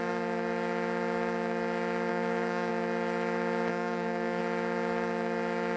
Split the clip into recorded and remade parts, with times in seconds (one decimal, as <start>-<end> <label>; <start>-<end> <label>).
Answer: 0.0-2.1 recorded; 2.1-2.7 remade; 2.7-3.7 recorded; 3.7-4.4 remade; 4.4-5.8 recorded